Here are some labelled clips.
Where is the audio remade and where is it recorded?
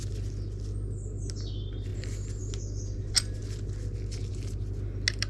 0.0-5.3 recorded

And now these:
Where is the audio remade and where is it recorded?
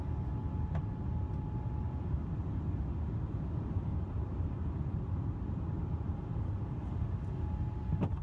0.0-3.9 recorded; 3.9-6.9 remade; 6.9-8.2 recorded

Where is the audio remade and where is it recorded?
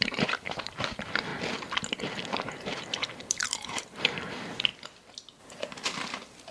0.0-1.3 remade; 1.3-2.0 recorded; 2.0-4.7 remade; 4.7-5.4 recorded; 5.4-6.5 remade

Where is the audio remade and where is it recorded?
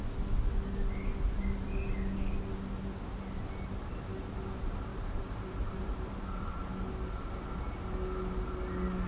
0.0-4.9 recorded; 4.9-6.7 remade; 6.7-9.1 recorded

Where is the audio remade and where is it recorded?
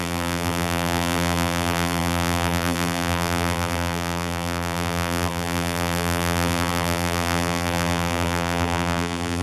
0.0-9.4 remade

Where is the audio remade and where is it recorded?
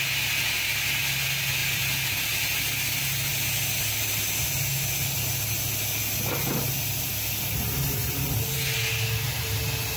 0.0-1.6 recorded; 1.6-2.6 remade; 2.6-10.0 recorded